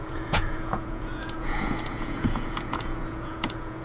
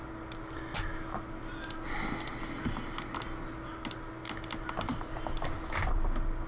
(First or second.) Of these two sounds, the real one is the second